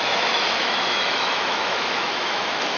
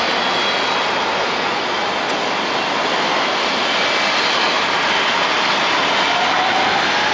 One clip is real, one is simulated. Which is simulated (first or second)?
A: first